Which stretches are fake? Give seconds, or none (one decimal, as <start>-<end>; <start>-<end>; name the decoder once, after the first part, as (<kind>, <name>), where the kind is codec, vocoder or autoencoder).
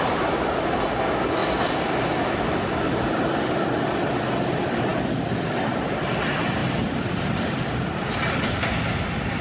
1.4-3.1 (vocoder, BigVGAN v2); 6.6-8.1